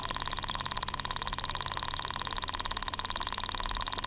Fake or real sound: real